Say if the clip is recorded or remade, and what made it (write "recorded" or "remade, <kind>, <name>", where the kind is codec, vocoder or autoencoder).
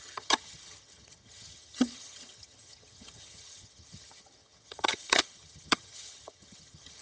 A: remade, vocoder, HiFi-GAN